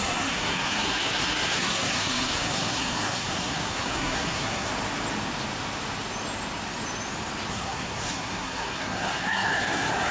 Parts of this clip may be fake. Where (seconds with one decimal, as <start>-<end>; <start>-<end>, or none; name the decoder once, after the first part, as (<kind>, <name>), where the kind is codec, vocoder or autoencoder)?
0.0-4.7 (codec, SNAC); 7.5-10.1